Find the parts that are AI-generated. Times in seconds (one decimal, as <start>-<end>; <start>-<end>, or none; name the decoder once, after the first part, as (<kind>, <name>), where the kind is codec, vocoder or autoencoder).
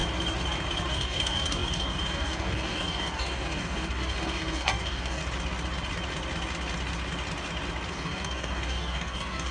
0.9-5.2 (codec, DAC); 7.9-9.5